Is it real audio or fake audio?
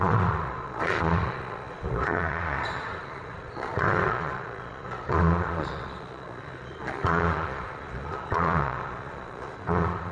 fake